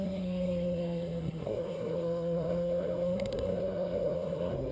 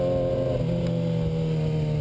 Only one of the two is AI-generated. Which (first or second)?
first